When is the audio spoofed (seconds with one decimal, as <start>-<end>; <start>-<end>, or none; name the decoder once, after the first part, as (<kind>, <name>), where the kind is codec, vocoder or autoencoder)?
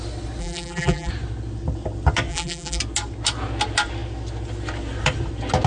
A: 0.4-1.1 (vocoder, BigVGAN v2); 2.3-2.8